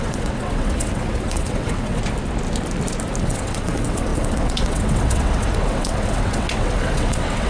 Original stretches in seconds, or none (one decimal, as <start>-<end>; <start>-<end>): 2.0-3.2